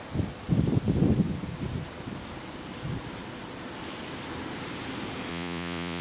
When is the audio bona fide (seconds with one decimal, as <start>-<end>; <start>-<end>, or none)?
0.0-5.3